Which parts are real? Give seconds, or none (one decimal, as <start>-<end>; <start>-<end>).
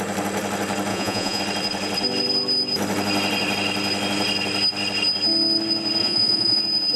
0.0-0.9; 1.4-6.0; 6.6-7.0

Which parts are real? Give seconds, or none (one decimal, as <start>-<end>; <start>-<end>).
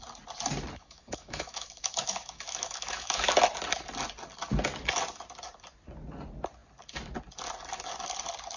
0.0-0.8; 3.3-8.6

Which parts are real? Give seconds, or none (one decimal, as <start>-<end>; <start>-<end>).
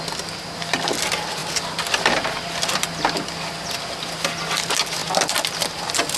0.0-6.2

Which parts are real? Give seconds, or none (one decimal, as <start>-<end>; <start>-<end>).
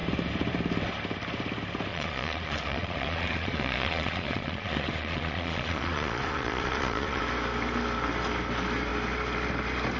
0.0-1.9; 7.2-10.0